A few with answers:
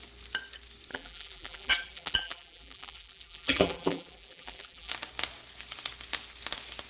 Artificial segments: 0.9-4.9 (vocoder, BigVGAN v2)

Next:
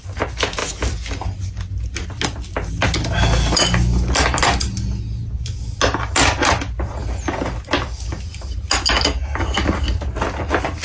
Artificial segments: none

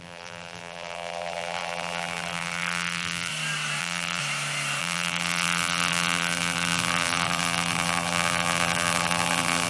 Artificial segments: 0.0-3.3 (vocoder, BigVGAN v2); 3.8-4.2; 4.8-9.7

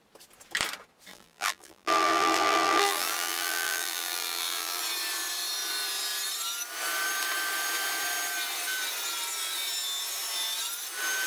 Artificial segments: 1.1-4.8 (vocoder, BigVGAN v2)

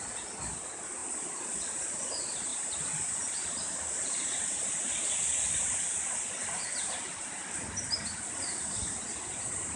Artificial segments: 2.5-4.9 (vocoder, BigVGAN v2)

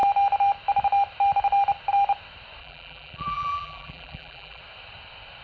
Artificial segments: 2.6-4.6 (vocoder, BigVGAN v2)